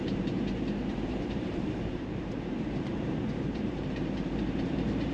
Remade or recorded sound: remade